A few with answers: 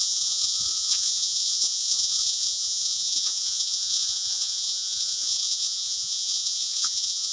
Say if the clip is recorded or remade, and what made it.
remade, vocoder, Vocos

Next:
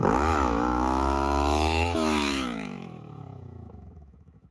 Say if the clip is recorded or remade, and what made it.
remade, autoencoder, DAC-VAE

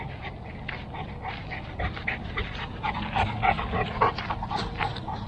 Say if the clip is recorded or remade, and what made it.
recorded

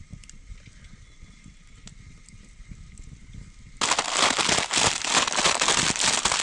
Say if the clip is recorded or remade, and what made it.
recorded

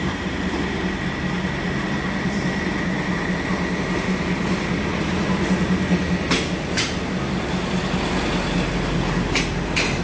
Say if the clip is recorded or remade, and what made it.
recorded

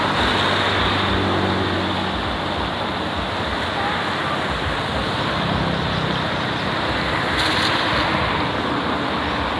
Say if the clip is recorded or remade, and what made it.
recorded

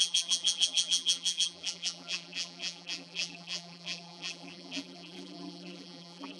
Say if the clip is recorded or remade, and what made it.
remade, vocoder, BigVGAN v2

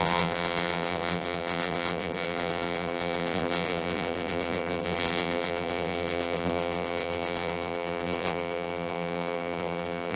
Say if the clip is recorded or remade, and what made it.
remade, vocoder, BigVGAN v2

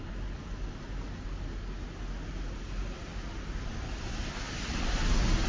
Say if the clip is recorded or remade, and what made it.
recorded